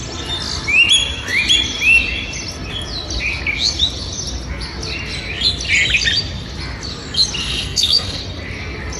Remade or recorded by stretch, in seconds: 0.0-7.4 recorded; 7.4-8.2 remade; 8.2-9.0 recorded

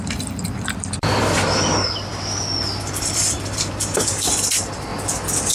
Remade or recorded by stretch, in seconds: 0.0-2.1 remade; 2.1-3.0 recorded; 3.0-4.9 remade; 4.9-5.5 recorded